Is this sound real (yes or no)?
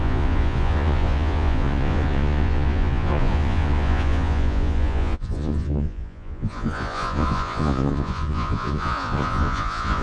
no